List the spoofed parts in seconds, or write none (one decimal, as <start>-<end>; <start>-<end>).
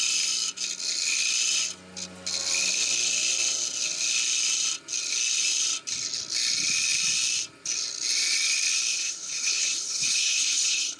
8.9-11.0